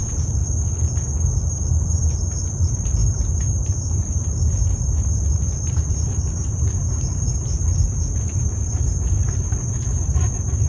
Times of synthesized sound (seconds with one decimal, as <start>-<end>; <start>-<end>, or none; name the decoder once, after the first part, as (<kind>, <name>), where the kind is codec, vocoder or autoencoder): 0.0-0.4 (vocoder, BigVGAN v2); 2.1-10.7